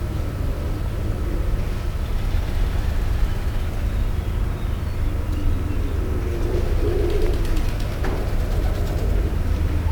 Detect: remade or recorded recorded